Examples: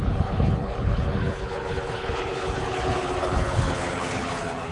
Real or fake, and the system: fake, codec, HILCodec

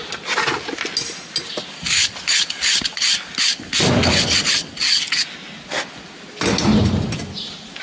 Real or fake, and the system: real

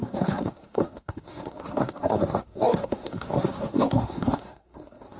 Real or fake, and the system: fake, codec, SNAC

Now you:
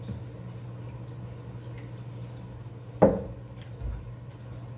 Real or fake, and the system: real